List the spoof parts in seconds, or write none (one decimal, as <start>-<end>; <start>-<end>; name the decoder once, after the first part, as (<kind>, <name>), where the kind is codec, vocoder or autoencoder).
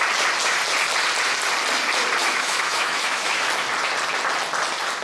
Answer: 2.2-3.5 (autoencoder, DAC-VAE)